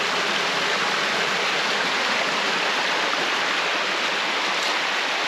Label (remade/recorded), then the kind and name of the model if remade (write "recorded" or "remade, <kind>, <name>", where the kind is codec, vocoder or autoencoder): recorded